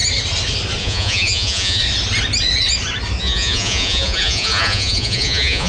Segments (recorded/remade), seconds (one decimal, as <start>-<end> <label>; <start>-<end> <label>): 0.0-0.8 recorded; 0.8-1.8 remade; 1.8-3.2 recorded; 3.2-5.7 remade